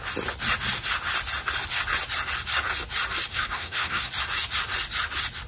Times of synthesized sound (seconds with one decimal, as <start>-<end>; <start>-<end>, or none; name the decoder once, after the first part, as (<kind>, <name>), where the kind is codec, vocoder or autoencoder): 3.3-4.1 (codec, SNAC)